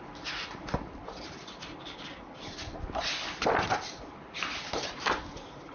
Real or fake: real